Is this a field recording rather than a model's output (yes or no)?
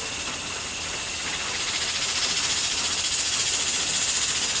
yes